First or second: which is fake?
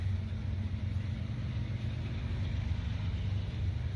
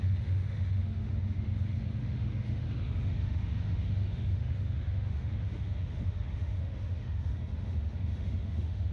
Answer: second